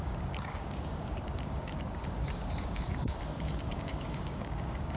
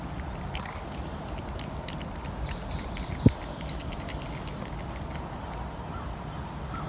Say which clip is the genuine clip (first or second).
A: second